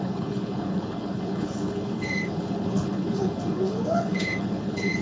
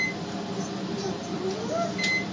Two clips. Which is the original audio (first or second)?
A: second